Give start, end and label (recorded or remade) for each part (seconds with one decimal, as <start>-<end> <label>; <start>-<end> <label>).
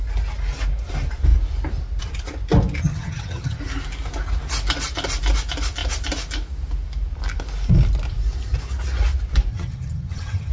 0.0-2.8 recorded; 2.8-3.6 remade; 3.6-9.5 recorded; 9.5-10.5 remade